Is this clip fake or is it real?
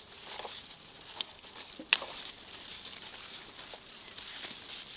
real